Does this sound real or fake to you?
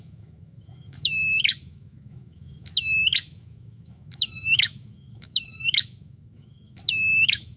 fake